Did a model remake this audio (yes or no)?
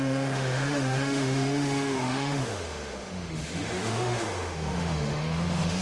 yes